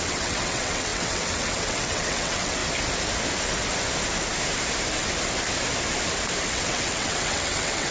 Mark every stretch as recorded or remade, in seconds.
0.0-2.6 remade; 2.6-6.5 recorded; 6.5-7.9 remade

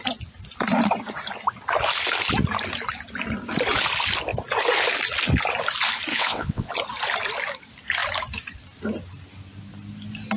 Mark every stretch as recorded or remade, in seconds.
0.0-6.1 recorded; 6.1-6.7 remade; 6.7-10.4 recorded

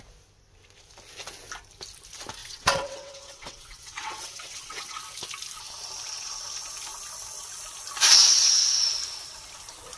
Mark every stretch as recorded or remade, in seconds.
0.0-2.4 recorded; 2.4-5.0 remade; 5.0-10.0 recorded

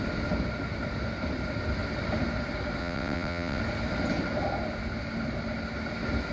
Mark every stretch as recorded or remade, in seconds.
0.0-2.8 recorded; 2.8-3.6 remade; 3.6-6.3 recorded

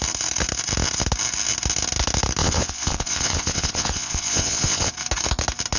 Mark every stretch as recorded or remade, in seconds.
0.0-2.4 recorded; 2.4-4.9 remade; 4.9-5.8 recorded